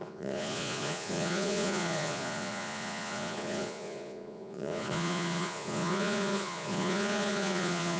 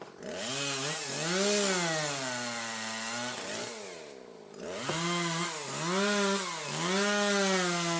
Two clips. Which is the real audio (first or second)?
second